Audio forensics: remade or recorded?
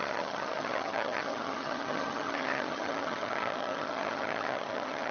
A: remade